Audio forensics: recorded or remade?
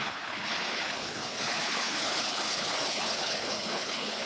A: remade